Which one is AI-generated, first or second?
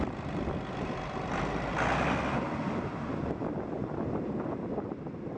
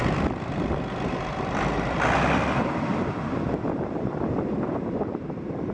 second